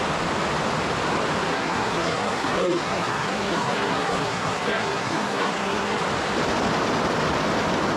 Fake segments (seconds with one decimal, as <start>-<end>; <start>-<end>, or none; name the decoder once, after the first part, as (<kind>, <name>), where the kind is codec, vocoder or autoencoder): 1.5-6.0 (codec, SNAC)